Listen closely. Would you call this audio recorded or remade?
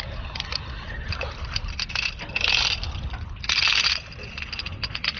recorded